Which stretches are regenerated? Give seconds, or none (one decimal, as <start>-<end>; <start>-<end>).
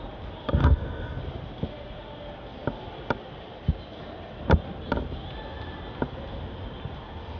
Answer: 0.6-1.2